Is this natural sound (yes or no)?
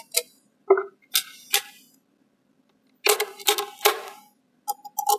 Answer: yes